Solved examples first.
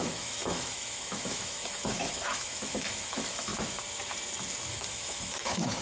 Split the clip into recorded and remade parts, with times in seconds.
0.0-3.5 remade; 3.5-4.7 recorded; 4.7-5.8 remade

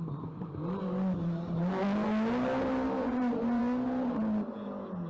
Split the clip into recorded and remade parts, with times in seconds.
0.0-3.0 recorded; 3.0-3.6 remade; 3.6-5.1 recorded